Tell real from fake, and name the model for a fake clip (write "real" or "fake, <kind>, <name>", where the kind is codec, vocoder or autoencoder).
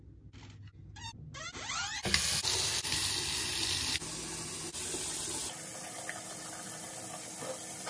real